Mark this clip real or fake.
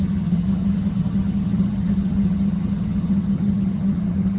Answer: fake